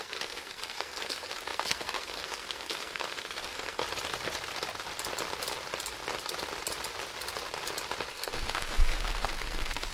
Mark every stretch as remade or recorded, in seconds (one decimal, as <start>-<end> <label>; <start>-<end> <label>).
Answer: 0.0-3.8 remade; 3.8-8.1 recorded; 8.1-9.9 remade